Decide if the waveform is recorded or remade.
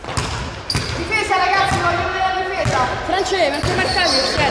recorded